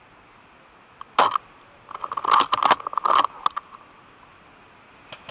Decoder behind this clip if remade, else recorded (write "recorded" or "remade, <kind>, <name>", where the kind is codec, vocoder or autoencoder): recorded